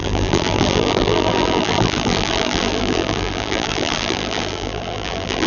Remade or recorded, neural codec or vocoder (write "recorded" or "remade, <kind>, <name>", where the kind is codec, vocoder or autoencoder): remade, vocoder, BigVGAN v2